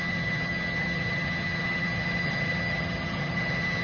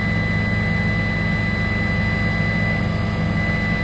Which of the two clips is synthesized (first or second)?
first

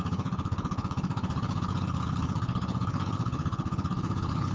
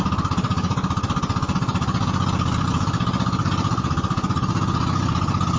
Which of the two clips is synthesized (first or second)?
first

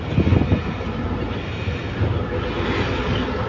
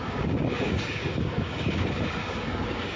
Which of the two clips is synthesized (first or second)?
second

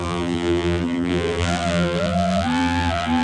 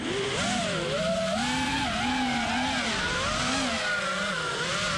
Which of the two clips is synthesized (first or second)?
first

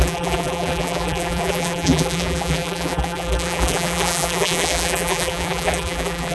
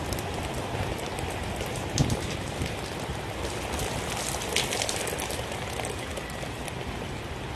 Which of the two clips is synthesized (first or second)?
first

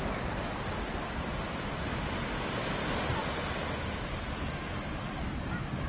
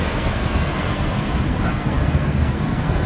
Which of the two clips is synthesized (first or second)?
second